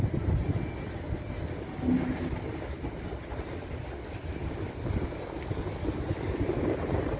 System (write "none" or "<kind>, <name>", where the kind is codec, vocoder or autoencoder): none